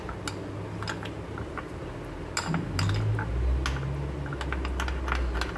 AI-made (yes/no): no